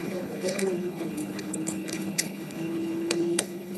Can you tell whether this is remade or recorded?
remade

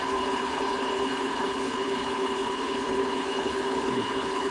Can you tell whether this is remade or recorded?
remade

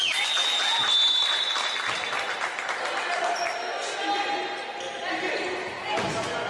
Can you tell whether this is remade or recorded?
recorded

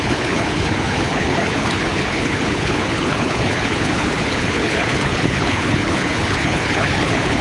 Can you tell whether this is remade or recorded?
remade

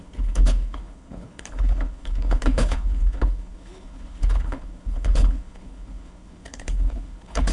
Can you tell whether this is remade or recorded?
remade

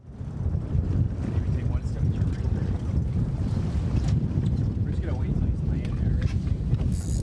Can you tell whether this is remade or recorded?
recorded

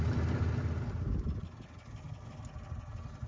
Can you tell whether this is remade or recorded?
recorded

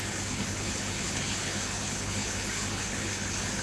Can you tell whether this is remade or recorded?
remade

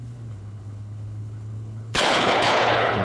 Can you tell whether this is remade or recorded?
remade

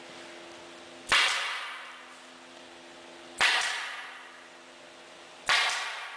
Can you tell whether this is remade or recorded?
recorded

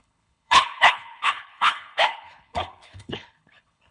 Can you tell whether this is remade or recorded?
remade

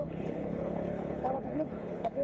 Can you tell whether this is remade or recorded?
remade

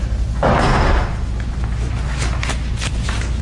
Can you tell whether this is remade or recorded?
recorded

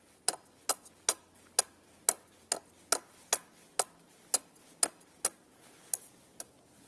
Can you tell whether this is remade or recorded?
recorded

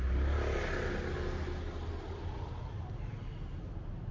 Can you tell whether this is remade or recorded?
recorded